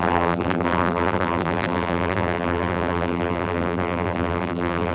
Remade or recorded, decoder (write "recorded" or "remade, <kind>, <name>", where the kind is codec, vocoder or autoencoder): remade, vocoder, BigVGAN v2